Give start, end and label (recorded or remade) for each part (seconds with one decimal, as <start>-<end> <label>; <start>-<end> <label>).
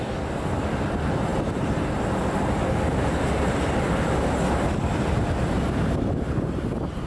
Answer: 0.0-7.1 recorded